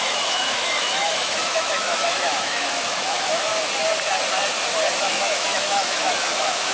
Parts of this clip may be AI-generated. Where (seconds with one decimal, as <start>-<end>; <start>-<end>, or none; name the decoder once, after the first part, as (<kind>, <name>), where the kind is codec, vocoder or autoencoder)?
0.0-3.5 (autoencoder, DAC-VAE); 5.0-6.7